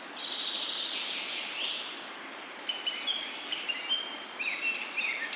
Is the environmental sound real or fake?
real